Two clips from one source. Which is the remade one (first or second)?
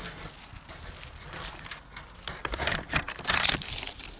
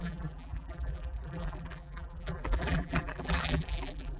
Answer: second